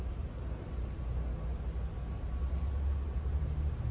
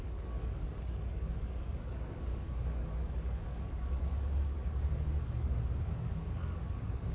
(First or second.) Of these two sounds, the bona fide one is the first